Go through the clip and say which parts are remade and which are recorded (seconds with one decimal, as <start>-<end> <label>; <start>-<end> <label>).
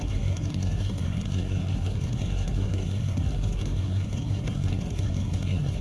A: 0.0-5.8 remade